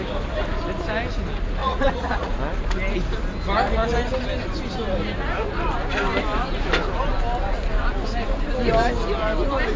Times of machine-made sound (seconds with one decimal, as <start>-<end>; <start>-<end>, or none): 1.6-2.3